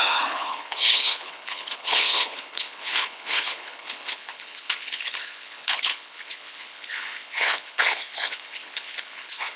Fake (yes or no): yes